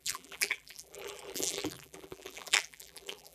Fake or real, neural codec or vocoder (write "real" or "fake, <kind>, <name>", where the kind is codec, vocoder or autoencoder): fake, vocoder, BigVGAN v2